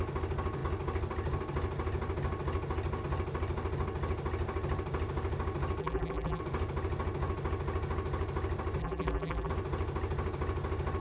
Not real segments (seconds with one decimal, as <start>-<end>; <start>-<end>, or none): 5.8-6.4; 8.8-9.5